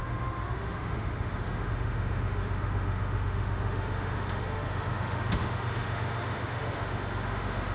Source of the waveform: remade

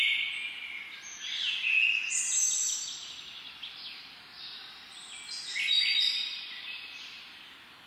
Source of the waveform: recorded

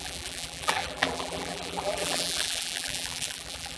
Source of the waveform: remade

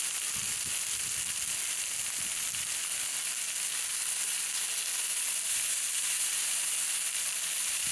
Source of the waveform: recorded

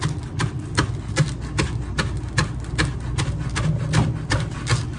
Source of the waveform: recorded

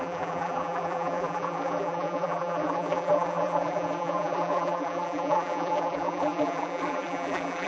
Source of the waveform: remade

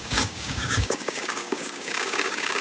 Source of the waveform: remade